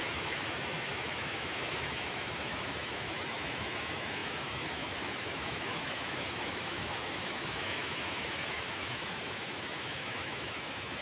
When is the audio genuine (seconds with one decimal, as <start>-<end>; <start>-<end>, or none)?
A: none